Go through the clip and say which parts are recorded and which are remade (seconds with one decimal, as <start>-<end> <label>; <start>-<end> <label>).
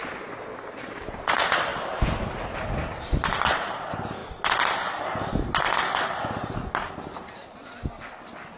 0.0-8.6 recorded